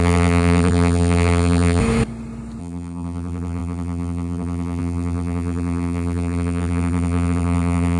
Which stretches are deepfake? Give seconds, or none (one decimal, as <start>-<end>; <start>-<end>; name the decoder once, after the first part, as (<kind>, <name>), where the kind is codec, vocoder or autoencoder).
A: 0.0-1.8 (vocoder, BigVGAN v2); 2.6-8.0